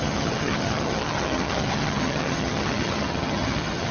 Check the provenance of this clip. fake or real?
fake